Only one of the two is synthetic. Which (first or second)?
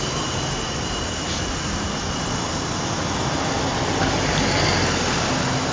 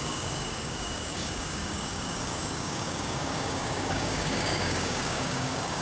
second